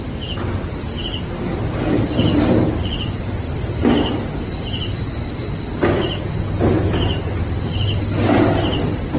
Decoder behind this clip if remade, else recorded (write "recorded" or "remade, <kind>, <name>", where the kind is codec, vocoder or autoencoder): recorded